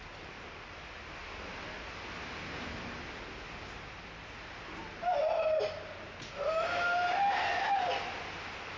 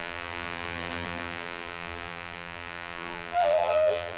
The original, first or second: first